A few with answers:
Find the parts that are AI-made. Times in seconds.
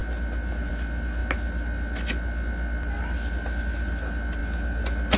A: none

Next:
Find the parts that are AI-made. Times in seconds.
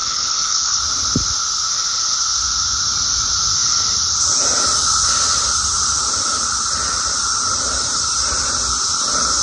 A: 0.0-0.8 (codec, HILCodec)